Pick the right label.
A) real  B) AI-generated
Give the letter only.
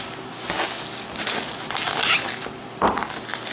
A